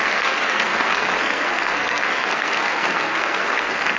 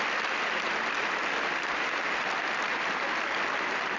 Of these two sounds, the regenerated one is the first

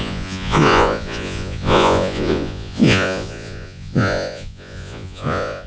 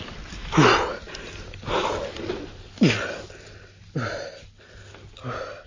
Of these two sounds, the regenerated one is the first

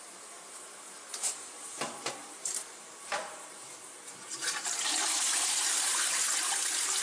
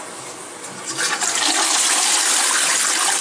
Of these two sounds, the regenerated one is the first